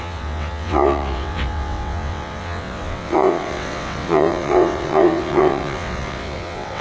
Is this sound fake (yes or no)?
yes